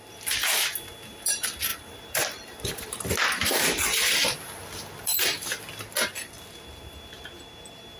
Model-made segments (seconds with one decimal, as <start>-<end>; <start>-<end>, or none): 1.7-5.6